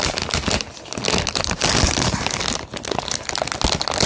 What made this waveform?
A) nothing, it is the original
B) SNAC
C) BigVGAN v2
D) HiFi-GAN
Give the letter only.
A